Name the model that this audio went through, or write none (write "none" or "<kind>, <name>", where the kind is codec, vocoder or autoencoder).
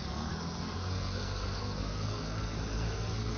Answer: codec, SNAC